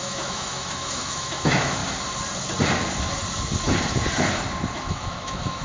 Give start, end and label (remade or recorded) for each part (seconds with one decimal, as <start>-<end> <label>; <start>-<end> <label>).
0.0-1.8 remade; 1.8-4.7 recorded; 4.7-5.6 remade